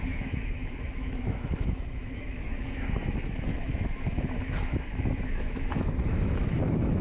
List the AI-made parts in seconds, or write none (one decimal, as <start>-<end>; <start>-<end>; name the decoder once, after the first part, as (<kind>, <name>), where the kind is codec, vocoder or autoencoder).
0.0-7.0 (autoencoder, DAC-VAE)